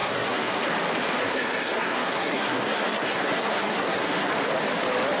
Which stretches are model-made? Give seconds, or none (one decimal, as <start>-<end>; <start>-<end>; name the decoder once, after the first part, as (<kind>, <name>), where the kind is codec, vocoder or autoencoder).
0.0-0.6 (codec, SNAC); 1.2-4.3